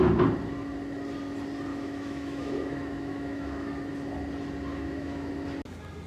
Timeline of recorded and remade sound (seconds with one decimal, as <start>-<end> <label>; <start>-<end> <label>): 0.0-1.7 recorded; 1.7-3.7 remade; 3.7-4.7 recorded; 4.7-5.3 remade; 5.3-6.1 recorded